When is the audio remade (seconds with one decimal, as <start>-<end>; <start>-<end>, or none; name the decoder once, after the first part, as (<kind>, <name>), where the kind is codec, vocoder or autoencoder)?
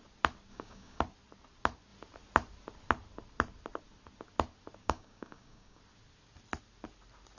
0.5-1.0 (codec, DAC); 4.8-5.8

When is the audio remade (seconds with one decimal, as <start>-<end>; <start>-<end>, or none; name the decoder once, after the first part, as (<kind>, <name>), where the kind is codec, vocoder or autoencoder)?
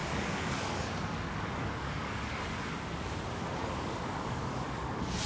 0.0-3.2 (codec, DAC); 3.6-5.3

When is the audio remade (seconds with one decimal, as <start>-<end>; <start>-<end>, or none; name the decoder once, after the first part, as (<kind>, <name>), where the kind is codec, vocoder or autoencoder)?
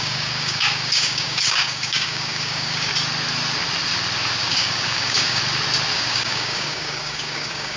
0.0-2.9 (codec, DAC); 4.4-5.4; 5.9-7.8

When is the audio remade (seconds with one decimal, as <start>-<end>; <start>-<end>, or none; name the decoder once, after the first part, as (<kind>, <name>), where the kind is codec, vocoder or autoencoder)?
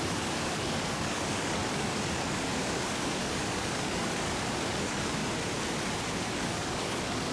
0.0-5.2 (codec, DAC); 6.2-7.3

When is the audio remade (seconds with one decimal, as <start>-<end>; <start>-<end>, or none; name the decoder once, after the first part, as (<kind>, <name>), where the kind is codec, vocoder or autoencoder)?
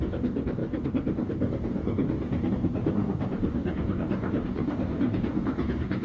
0.0-6.0 (codec, DAC)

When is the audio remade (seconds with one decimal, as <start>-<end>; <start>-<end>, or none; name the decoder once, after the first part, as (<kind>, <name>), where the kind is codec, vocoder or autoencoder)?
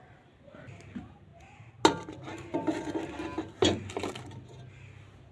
none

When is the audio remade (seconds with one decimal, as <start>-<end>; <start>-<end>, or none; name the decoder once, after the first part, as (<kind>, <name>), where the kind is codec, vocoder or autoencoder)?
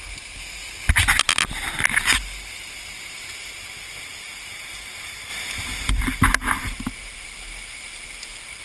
none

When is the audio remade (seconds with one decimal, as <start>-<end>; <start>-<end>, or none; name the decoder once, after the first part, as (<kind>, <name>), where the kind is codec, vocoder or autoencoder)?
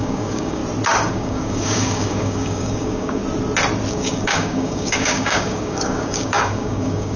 0.0-0.6 (codec, DAC); 1.1-3.2; 3.9-7.2